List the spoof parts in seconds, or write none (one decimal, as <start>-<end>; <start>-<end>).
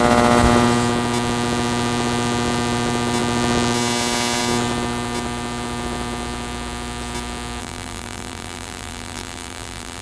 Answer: 7.6-10.0